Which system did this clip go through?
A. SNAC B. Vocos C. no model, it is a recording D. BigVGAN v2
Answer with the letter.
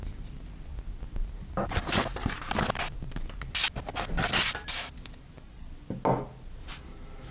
C